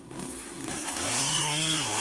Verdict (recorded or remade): remade